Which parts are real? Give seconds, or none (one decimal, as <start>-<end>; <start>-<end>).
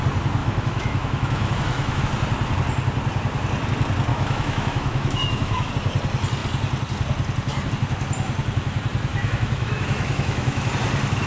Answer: 0.0-0.4; 2.0-4.1; 5.7-9.1; 10.7-11.3